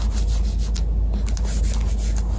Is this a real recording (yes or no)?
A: yes